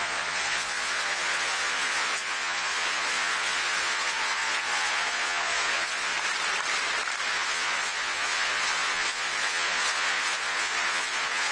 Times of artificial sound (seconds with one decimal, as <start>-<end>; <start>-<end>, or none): 0.0-6.1; 7.3-11.5